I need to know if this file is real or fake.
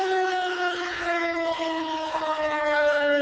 fake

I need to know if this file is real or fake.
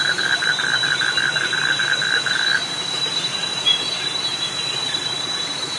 real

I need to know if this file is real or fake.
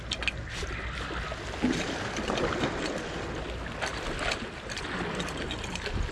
real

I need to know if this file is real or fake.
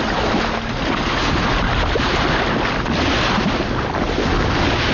real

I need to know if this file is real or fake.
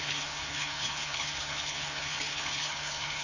fake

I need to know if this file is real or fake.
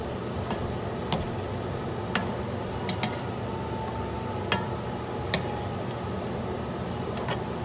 real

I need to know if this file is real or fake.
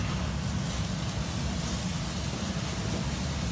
real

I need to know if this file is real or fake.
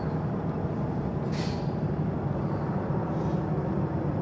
real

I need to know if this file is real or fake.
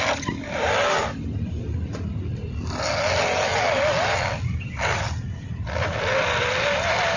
real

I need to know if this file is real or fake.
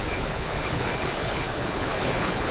fake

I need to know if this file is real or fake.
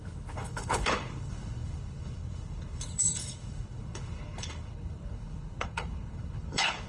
fake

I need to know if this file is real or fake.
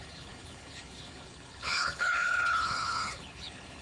fake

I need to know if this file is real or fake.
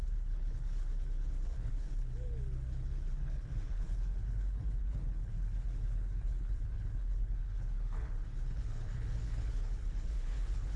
fake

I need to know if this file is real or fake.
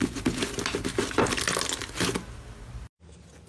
real